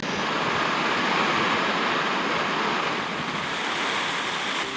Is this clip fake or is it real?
real